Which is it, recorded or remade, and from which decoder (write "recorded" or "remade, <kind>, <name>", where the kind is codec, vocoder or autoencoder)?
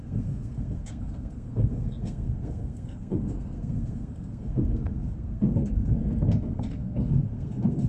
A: remade, codec, SNAC